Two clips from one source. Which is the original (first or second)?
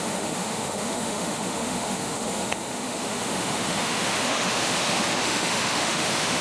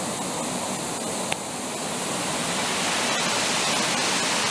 second